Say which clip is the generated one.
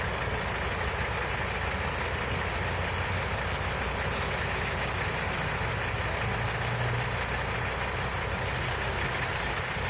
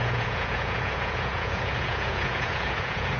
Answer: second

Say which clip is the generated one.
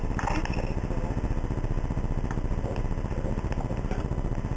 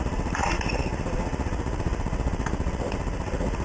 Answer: second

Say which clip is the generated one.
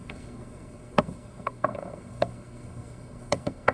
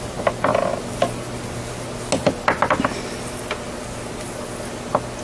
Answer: first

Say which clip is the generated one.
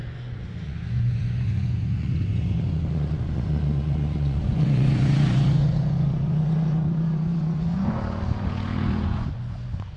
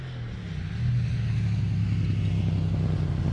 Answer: first